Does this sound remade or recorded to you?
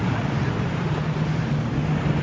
remade